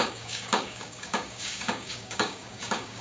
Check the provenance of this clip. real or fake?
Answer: fake